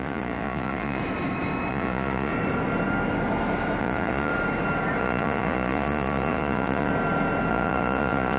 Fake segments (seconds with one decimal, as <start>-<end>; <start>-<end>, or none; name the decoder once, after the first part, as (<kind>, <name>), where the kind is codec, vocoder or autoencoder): 0.0-1.0 (vocoder, Vocos); 1.7-2.3; 3.8-4.3; 5.0-6.9; 7.5-8.4